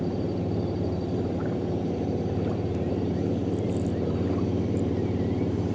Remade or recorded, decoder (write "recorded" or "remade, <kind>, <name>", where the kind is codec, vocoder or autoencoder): remade, vocoder, BigVGAN v2